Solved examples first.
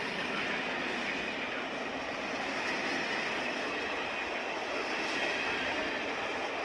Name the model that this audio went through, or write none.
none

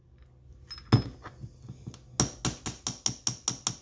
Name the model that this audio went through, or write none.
none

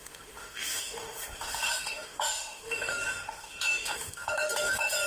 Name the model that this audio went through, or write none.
autoencoder, DAC-VAE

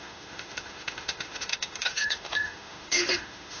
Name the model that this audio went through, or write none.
autoencoder, DAC-VAE